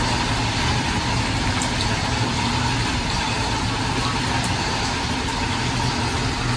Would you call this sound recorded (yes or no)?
yes